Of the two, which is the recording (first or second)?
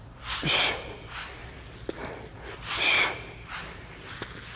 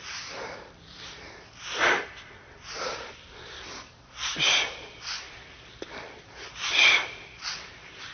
first